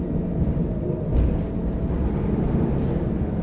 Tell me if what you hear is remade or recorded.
recorded